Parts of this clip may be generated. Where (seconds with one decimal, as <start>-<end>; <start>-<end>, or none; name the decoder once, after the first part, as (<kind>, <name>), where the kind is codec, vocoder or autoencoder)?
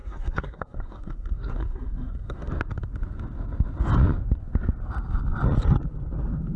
0.0-2.5 (codec, SNAC)